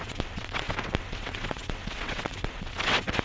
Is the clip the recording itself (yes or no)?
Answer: no